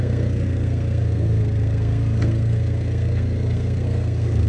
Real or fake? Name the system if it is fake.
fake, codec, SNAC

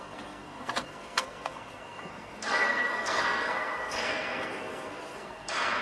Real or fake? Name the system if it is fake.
fake, codec, SNAC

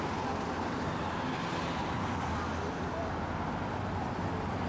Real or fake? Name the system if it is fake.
real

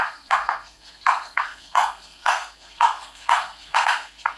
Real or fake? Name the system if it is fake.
fake, codec, SNAC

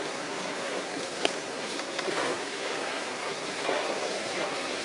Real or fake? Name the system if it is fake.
fake, codec, SNAC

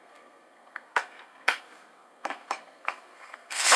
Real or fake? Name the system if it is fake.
fake, codec, SNAC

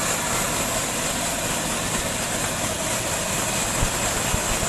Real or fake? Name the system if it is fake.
real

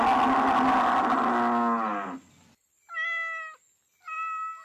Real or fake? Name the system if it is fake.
real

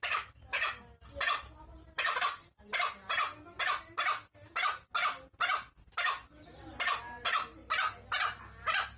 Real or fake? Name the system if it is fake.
real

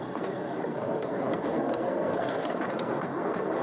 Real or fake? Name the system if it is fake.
fake, codec, SNAC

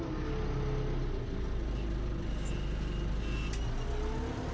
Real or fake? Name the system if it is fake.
real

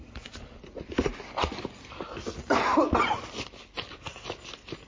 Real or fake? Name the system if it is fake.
real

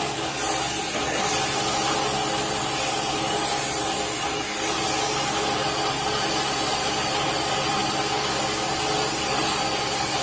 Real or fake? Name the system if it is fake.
real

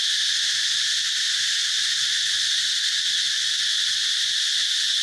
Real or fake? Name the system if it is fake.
real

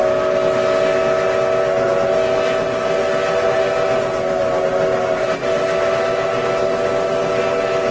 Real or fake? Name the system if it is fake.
real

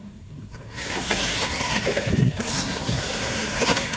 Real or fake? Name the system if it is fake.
fake, codec, SNAC